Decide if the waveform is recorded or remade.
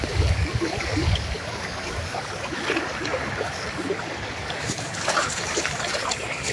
remade